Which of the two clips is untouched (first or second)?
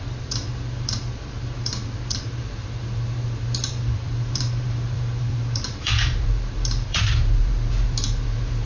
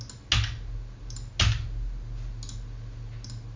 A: second